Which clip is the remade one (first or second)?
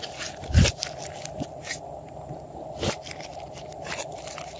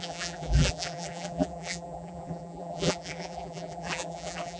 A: second